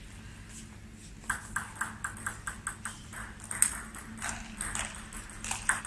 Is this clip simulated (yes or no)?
no